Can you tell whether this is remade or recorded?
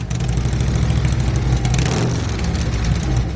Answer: recorded